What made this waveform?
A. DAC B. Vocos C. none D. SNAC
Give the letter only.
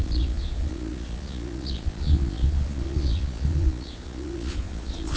B